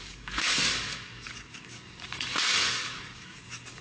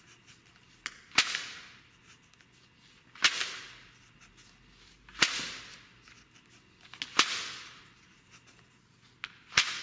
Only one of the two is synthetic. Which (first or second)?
first